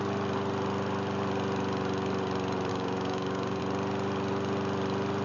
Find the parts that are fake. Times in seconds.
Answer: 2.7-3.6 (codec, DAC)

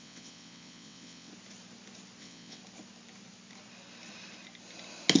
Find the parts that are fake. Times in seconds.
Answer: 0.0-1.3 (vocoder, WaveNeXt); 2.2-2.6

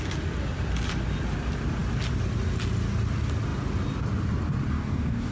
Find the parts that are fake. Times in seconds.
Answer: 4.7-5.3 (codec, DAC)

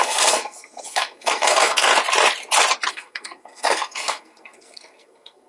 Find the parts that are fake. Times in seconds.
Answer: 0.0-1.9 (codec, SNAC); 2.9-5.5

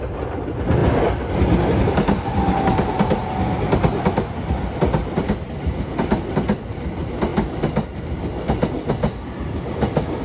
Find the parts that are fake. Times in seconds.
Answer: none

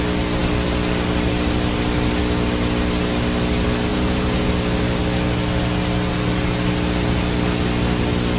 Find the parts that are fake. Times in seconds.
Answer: 3.9-4.5 (vocoder, Vocos)

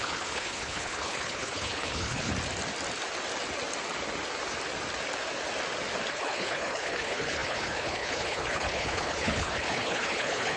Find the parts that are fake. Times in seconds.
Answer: 0.0-2.3 (codec, HILCodec); 6.1-10.6